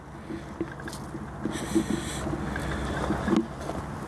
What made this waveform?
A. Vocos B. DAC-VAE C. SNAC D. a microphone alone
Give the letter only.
D